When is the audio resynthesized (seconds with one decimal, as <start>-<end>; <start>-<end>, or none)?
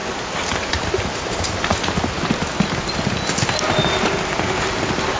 none